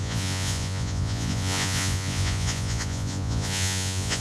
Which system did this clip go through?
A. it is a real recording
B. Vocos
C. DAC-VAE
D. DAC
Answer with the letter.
B